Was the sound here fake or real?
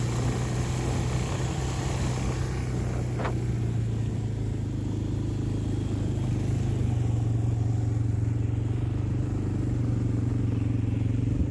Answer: real